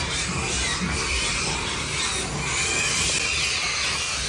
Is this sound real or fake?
real